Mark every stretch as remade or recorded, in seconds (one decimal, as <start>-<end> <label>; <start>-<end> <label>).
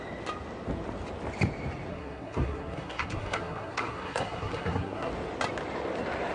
0.0-1.9 recorded; 1.9-5.1 remade; 5.1-6.3 recorded